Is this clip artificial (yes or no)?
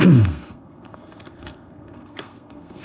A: yes